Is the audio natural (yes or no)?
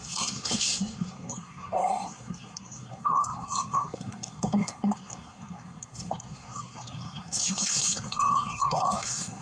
no